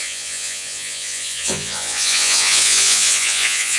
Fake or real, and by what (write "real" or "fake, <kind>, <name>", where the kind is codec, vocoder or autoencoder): fake, vocoder, Vocos